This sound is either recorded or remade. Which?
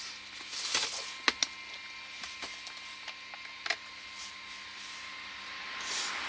recorded